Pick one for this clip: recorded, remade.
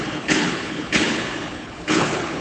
remade